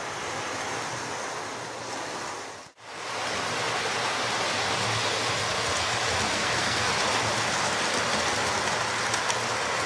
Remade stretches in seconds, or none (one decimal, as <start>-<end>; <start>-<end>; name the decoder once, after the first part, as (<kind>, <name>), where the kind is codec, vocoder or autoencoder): 6.3-6.9 (codec, SNAC)